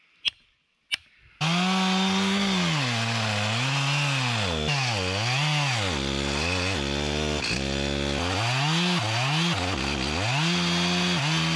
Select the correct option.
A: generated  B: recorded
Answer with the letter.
B